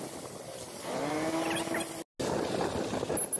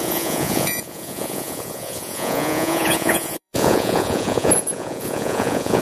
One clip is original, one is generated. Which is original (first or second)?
first